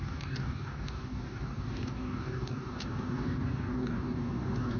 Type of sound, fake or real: fake